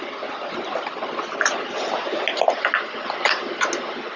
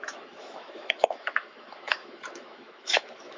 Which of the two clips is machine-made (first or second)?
second